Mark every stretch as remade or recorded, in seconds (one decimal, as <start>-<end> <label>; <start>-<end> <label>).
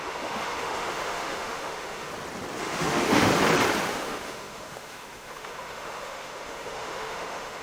0.0-2.1 remade; 2.1-2.6 recorded; 2.6-3.3 remade; 3.3-3.8 recorded; 3.8-7.6 remade